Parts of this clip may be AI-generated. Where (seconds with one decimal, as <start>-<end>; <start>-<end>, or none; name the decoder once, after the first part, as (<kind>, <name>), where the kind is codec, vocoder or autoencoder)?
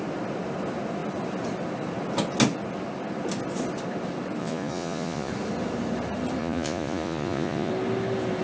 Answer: 4.4-5.3 (vocoder, Vocos); 6.4-7.7